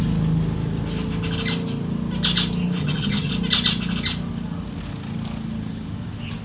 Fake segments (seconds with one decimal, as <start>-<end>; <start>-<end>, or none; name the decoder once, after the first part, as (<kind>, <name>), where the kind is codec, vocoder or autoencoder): 2.8-3.3 (vocoder, HiFi-GAN)